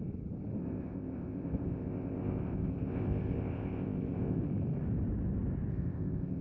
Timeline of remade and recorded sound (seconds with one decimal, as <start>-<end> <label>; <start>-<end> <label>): 0.0-0.6 recorded; 0.6-4.4 remade; 4.4-5.7 recorded; 5.7-6.4 remade